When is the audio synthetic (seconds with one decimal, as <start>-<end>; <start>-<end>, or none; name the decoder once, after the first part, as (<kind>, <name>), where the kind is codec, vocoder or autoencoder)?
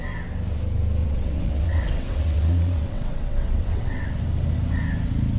1.0-4.2 (vocoder, WaveNeXt)